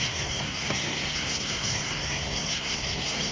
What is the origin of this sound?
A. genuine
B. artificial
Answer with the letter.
B